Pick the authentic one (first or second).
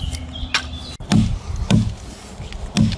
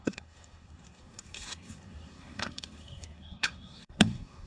first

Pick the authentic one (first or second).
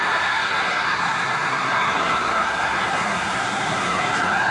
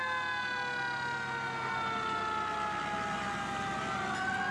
second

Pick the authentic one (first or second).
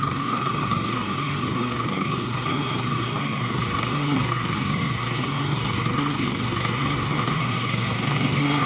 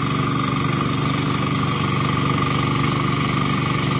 second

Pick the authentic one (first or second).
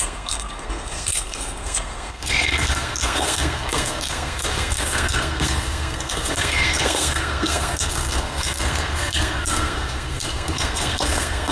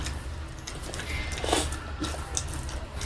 second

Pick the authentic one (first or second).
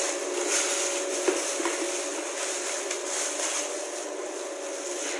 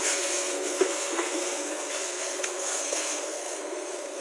first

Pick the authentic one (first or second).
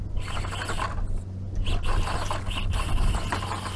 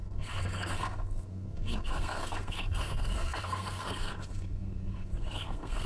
first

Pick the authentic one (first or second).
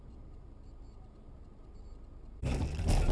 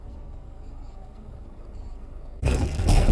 first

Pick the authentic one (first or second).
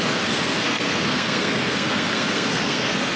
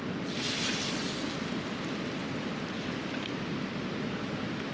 second